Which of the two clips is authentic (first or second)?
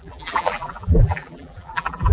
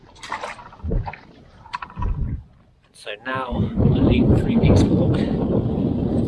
second